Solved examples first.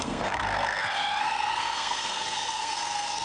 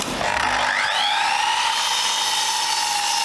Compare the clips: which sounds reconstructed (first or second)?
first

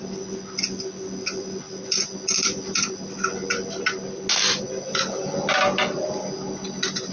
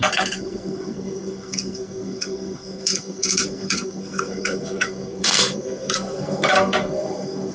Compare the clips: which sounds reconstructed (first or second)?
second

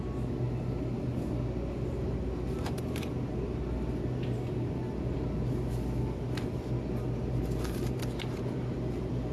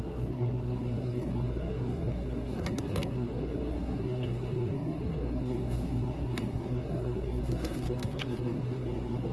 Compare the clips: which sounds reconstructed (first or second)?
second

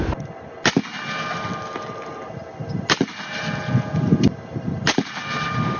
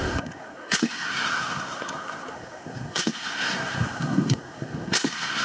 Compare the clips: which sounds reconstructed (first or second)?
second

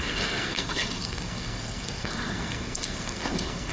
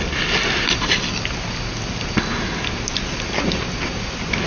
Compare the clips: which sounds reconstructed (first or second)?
first